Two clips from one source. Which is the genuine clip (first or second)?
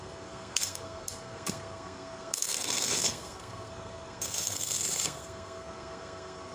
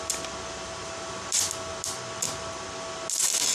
second